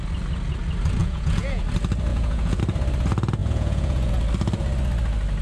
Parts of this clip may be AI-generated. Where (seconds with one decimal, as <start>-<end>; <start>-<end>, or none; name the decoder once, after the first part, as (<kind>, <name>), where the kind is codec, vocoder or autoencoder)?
1.0-1.6 (vocoder, Vocos); 2.1-2.6; 3.4-4.1